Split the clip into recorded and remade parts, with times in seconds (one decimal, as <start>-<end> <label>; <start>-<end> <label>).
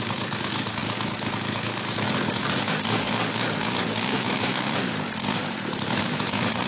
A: 0.0-5.4 remade; 5.4-6.0 recorded; 6.0-6.7 remade